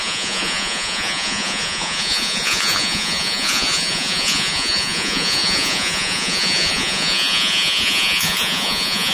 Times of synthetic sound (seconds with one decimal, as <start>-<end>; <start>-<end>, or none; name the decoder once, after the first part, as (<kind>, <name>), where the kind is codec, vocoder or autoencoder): 0.0-9.1 (vocoder, Vocos)